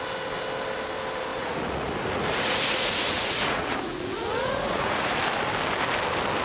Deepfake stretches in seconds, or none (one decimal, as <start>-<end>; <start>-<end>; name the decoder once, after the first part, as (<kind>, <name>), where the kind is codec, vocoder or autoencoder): 1.3-5.1 (vocoder, Vocos)